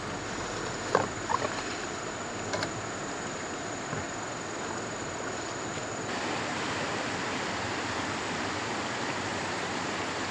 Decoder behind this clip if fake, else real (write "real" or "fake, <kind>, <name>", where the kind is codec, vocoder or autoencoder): real